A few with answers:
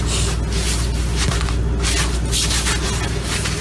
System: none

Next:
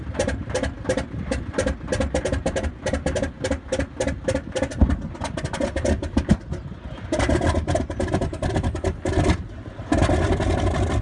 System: none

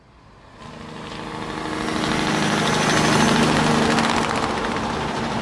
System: none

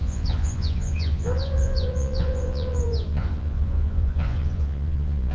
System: vocoder, Vocos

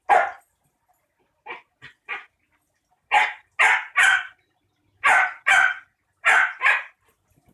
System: none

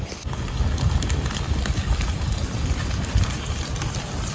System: none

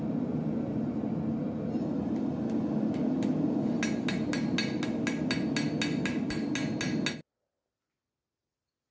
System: none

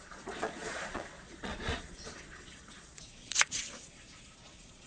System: vocoder, Vocos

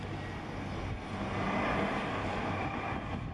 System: none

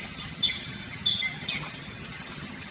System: vocoder, HiFi-GAN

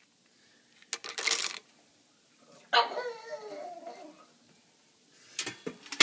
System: none